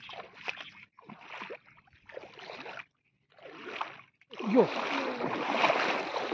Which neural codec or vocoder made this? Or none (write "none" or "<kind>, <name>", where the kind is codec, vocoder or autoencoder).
none